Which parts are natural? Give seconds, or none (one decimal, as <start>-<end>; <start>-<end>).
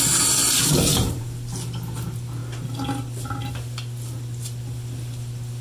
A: 0.0-0.4; 1.2-5.6